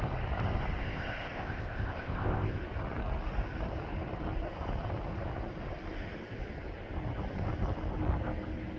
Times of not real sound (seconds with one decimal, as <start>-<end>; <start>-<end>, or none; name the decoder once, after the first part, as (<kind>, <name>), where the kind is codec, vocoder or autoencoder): 0.8-2.6 (codec, ZipCodec)